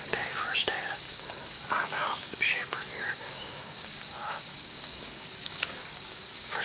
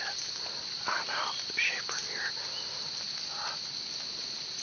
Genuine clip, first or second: second